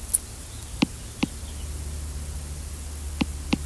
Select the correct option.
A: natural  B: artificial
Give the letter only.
A